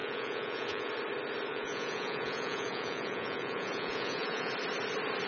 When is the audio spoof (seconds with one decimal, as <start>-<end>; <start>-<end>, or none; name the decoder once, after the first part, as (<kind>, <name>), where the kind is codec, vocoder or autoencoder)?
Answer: 0.0-0.9 (vocoder, Vocos); 1.5-4.5